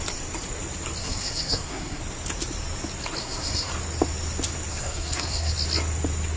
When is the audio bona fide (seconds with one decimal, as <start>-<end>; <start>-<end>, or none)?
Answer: 0.0-1.0; 2.0-3.2; 3.7-4.7; 5.5-6.4